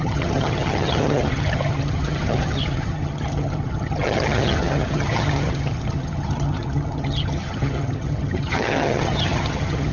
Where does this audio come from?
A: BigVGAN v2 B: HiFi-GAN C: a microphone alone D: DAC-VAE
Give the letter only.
B